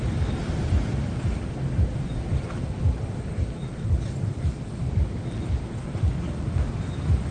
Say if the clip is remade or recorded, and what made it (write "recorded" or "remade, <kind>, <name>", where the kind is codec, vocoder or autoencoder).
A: recorded